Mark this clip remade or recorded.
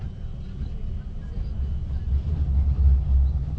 recorded